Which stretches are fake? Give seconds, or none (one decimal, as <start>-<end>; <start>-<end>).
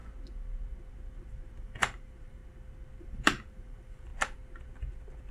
1.6-2.4; 3.0-4.1